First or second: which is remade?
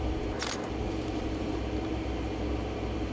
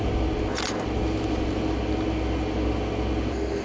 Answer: first